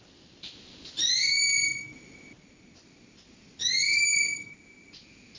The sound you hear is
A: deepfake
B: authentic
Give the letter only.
B